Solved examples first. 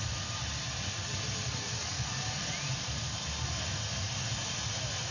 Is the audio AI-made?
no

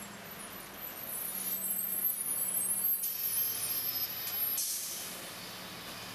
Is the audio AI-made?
no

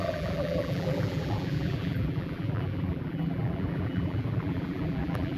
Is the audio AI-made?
yes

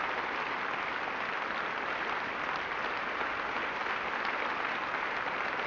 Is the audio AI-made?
no